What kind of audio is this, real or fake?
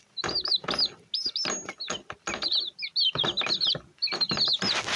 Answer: real